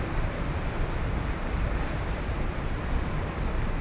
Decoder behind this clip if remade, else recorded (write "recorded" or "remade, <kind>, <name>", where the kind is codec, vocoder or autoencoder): recorded